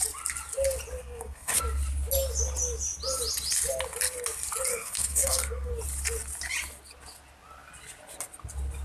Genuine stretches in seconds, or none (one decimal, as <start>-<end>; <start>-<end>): 0.0-1.0; 1.6-4.7; 5.7-8.8